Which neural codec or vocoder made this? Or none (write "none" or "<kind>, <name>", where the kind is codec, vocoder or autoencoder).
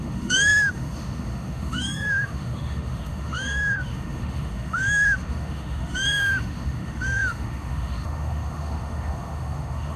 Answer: autoencoder, DAC-VAE